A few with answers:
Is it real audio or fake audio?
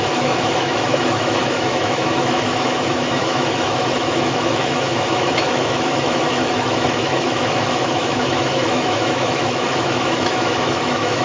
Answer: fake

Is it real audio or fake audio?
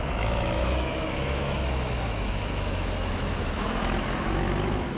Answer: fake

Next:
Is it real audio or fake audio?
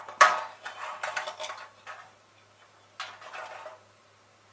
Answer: real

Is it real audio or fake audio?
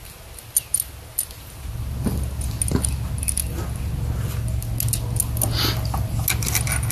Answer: real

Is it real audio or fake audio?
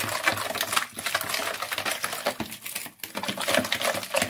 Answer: real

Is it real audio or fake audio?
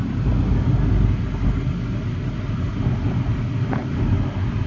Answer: real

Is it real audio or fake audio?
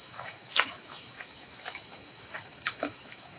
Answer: fake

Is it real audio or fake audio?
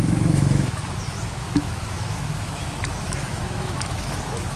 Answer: fake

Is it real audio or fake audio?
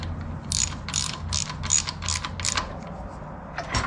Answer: real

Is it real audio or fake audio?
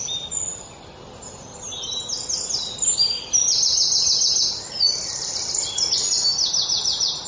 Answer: real